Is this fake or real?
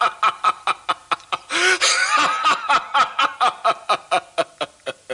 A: real